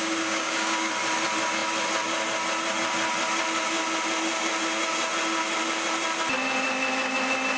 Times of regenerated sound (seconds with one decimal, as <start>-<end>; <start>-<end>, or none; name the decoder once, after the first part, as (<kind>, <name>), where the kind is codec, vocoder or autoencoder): 0.0-0.9 (codec, DAC)